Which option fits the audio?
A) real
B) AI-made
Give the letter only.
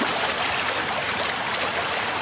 A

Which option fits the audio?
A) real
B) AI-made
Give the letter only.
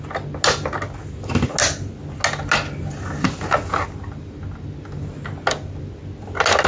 A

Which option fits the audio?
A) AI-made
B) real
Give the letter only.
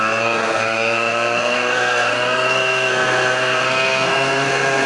A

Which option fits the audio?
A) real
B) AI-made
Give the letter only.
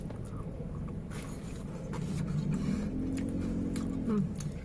A